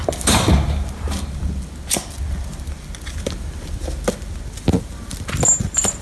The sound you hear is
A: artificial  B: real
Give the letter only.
B